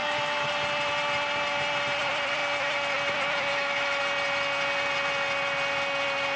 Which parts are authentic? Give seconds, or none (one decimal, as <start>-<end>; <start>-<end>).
0.5-3.5; 4.0-6.4